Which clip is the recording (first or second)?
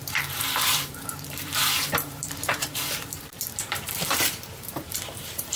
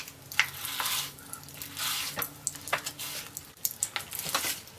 second